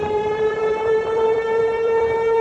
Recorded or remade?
remade